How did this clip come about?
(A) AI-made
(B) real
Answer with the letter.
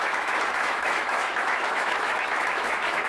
A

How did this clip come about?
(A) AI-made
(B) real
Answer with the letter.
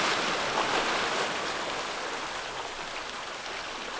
B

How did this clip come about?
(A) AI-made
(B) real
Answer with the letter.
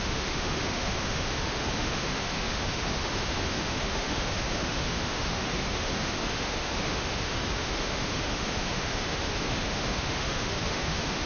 A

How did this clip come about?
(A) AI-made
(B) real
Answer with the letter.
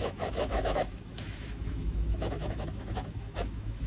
A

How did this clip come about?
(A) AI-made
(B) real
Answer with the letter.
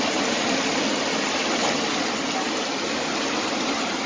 B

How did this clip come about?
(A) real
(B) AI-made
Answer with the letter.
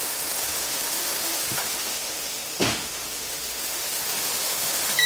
B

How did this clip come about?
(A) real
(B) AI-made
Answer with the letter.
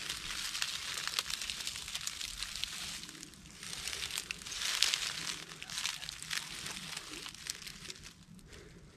A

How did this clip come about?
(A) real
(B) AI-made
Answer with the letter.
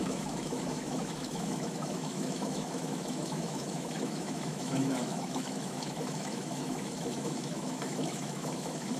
B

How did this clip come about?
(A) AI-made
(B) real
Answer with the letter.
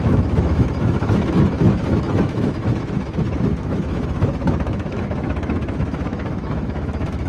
A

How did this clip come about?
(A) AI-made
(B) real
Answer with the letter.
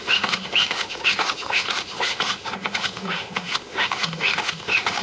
A